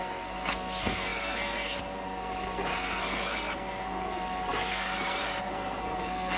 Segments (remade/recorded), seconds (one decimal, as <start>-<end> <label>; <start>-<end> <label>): 0.0-6.4 remade